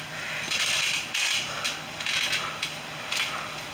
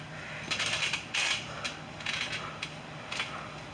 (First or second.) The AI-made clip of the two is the first